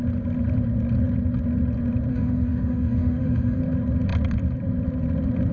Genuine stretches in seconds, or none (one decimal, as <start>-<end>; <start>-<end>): 0.0-2.1; 3.6-5.5